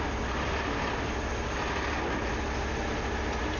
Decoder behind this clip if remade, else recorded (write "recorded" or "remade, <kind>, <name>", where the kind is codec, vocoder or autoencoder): recorded